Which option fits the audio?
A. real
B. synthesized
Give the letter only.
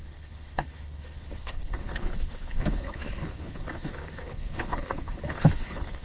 B